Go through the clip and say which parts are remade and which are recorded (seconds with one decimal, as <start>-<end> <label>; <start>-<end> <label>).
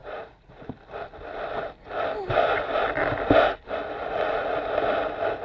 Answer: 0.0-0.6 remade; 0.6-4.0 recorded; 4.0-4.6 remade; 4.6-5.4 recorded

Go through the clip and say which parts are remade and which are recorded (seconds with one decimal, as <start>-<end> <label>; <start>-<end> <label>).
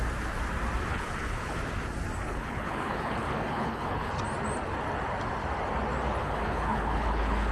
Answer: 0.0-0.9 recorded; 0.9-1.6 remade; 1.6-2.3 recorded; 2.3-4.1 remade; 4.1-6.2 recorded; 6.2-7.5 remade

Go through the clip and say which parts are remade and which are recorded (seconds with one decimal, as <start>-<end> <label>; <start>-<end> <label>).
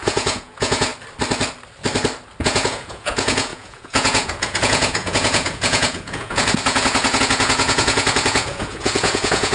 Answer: 0.0-0.9 remade; 0.9-2.4 recorded; 2.4-9.5 remade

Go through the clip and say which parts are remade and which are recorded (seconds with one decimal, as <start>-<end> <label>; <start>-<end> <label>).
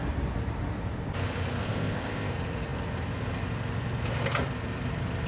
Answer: 0.0-1.6 recorded; 1.6-2.3 remade; 2.3-5.3 recorded